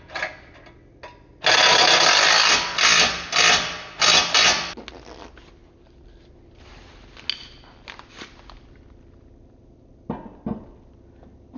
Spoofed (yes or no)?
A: no